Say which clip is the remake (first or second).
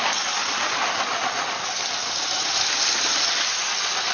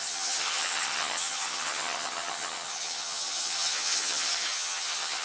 second